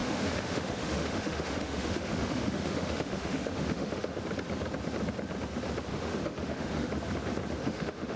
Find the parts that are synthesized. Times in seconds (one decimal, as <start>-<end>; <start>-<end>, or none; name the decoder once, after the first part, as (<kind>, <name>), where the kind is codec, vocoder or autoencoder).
0.0-4.2 (autoencoder, DAC-VAE); 5.9-6.9; 7.6-8.2